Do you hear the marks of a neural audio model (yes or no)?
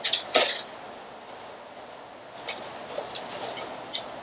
no